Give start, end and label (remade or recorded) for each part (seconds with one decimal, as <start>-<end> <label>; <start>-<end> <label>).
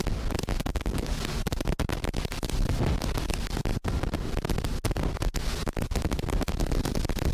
0.0-0.5 recorded; 0.5-1.2 remade; 1.2-7.3 recorded